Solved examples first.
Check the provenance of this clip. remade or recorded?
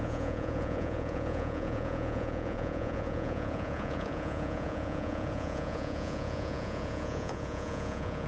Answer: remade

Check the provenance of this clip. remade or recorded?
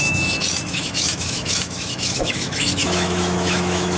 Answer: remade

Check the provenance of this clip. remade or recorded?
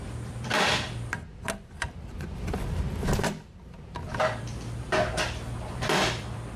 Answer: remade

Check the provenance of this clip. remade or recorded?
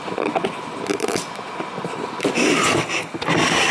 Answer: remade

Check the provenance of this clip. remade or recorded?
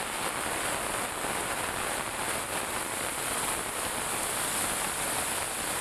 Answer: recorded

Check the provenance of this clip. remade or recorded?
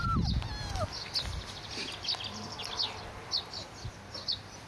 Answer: recorded